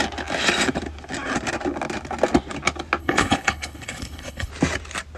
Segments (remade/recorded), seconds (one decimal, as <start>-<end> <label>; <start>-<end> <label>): 0.0-3.0 recorded; 3.0-4.5 remade; 4.5-5.2 recorded